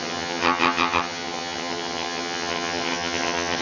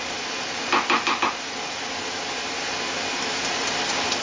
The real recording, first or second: second